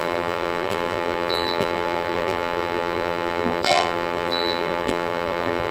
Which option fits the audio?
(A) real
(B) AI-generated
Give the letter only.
B